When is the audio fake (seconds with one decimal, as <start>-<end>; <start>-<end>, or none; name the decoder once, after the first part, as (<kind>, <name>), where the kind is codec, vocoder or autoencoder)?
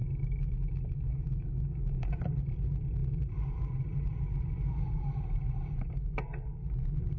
0.0-2.2 (autoencoder, DAC-VAE)